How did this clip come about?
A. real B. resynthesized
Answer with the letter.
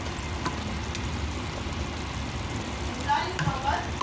A